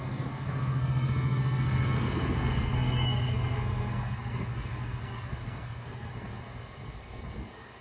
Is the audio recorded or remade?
remade